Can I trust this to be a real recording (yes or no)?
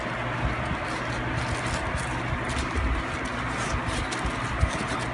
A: yes